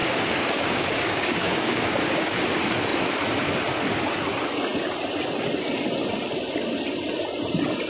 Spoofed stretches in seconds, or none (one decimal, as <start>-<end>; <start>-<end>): 0.0-2.4